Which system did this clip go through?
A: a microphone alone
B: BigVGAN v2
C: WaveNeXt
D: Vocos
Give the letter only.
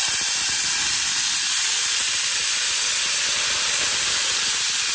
A